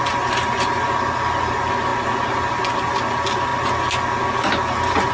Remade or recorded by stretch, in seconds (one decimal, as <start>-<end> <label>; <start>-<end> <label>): 0.0-5.1 recorded